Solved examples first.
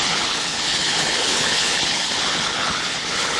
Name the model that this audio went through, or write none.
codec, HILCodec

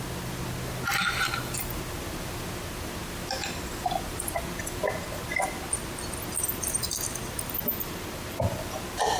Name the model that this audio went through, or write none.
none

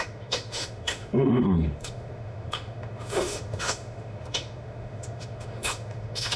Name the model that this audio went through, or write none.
autoencoder, DAC-VAE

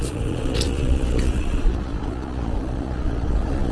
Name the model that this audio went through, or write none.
vocoder, Vocos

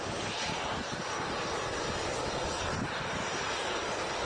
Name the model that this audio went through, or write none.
none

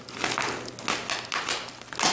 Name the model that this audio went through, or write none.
none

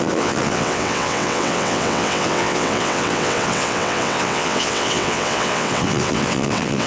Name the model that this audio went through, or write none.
vocoder, WaveNeXt